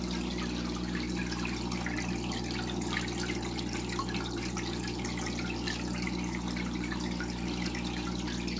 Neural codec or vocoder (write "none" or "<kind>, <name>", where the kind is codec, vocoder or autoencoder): none